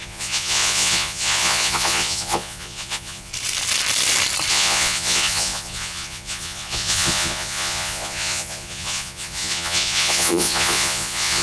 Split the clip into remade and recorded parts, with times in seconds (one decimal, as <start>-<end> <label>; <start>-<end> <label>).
0.0-3.3 remade; 3.3-4.5 recorded; 4.5-11.4 remade